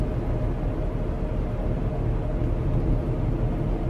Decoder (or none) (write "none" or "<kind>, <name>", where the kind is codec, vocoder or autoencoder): none